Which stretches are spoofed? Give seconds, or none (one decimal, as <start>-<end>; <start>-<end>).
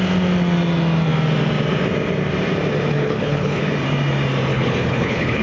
2.9-3.6; 4.5-5.4